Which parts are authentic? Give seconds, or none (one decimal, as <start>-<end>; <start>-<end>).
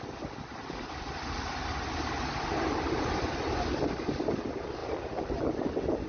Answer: 0.0-6.1